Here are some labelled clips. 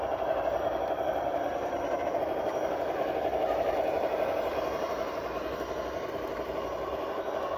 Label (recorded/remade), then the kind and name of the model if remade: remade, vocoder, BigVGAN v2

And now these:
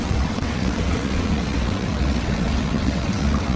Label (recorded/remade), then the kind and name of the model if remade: remade, vocoder, WaveNeXt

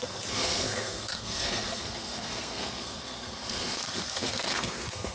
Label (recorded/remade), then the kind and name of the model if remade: remade, codec, SNAC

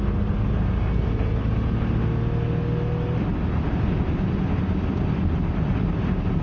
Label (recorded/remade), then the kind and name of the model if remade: recorded